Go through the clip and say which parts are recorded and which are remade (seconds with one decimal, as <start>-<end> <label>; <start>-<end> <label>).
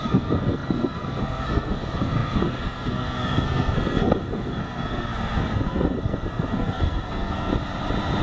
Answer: 0.0-7.5 remade; 7.5-8.2 recorded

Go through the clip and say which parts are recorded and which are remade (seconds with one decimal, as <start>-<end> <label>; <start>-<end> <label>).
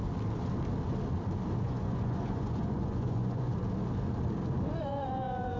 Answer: 0.0-1.6 recorded; 1.6-3.5 remade; 3.5-4.8 recorded; 4.8-5.6 remade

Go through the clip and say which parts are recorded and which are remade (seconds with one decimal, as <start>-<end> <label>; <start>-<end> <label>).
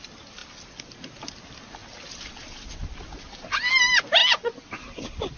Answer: 0.0-5.4 recorded